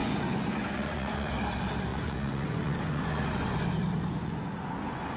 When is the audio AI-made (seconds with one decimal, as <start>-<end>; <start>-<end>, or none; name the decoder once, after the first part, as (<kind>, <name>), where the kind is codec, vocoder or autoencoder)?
0.0-1.3 (vocoder, Vocos); 1.9-3.7; 4.2-5.2